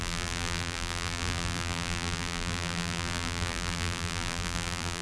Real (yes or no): no